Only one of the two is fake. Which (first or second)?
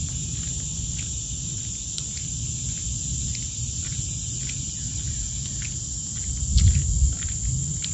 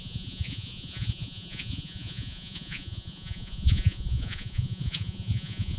second